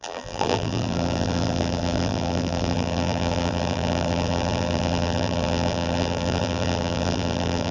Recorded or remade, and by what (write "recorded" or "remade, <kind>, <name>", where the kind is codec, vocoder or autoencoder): remade, vocoder, BigVGAN v2